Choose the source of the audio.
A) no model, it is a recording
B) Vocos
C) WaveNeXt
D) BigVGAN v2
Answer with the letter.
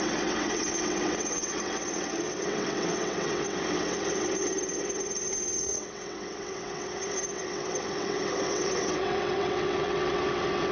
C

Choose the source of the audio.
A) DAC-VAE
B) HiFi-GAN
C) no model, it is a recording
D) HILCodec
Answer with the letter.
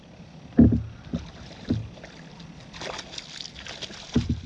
C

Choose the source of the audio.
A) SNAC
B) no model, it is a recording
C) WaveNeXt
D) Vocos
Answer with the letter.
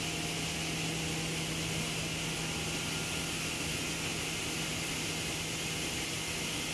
B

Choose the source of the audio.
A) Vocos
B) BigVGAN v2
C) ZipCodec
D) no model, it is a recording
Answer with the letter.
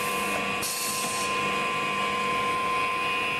D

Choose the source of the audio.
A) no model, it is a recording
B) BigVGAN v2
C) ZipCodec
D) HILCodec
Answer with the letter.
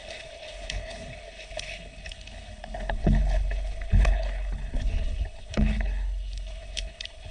D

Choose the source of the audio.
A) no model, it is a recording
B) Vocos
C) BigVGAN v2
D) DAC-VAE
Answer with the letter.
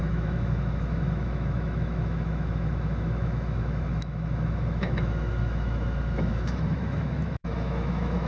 D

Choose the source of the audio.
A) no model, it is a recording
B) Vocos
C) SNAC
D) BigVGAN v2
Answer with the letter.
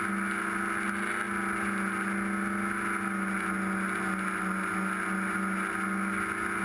A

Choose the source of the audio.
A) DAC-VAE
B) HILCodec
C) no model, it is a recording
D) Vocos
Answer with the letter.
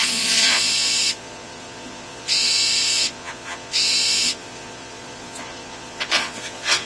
D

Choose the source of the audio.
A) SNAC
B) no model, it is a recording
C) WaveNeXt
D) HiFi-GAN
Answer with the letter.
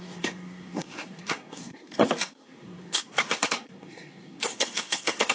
A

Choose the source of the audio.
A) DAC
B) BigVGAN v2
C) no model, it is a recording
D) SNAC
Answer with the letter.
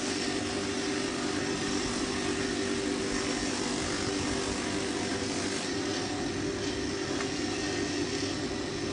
C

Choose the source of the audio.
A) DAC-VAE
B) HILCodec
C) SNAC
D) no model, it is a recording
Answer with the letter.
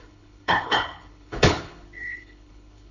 B